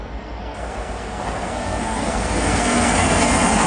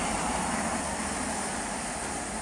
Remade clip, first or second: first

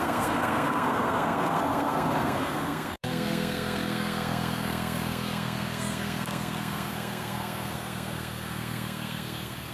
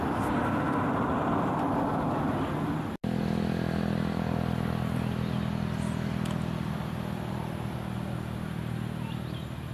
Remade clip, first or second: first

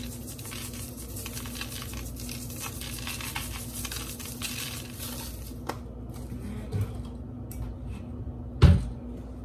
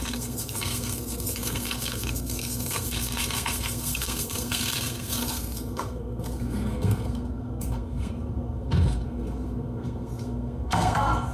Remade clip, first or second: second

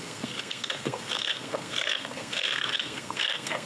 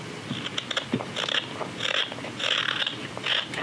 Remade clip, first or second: first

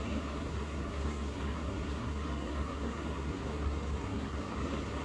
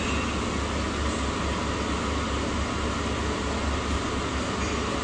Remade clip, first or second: first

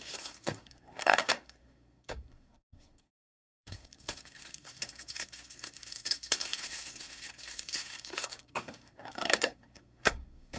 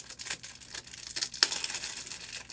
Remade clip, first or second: first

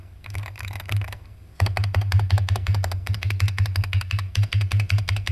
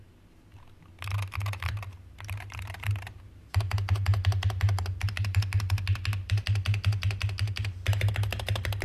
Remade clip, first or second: first